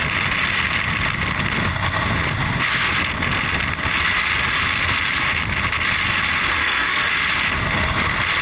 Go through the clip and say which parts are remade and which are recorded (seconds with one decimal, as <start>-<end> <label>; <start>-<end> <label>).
0.0-6.6 recorded; 6.6-7.1 remade; 7.1-8.4 recorded